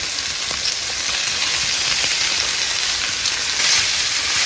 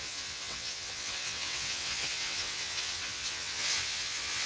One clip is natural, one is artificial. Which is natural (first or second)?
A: first